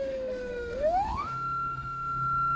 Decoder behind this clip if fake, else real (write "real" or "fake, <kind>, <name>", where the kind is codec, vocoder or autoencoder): fake, autoencoder, DAC-VAE